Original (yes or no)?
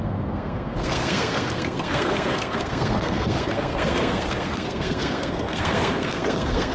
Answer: no